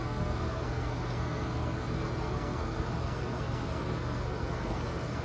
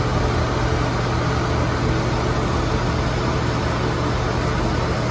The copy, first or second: first